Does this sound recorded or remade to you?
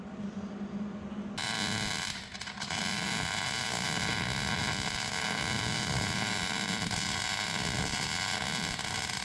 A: recorded